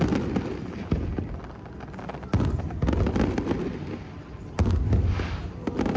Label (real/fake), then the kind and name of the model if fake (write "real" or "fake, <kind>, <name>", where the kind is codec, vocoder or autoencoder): real